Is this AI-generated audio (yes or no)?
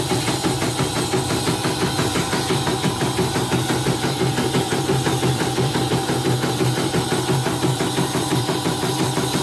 yes